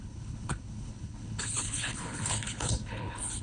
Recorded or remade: remade